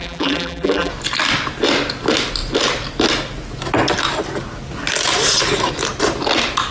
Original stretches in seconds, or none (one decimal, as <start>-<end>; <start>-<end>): 0.9-6.7